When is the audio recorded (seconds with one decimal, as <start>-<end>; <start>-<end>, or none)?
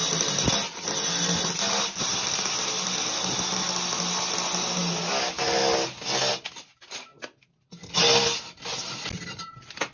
0.0-9.9